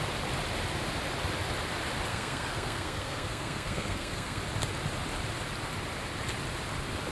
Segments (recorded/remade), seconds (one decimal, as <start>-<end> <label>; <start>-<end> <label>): 0.0-2.1 recorded; 2.1-4.4 remade; 4.4-7.1 recorded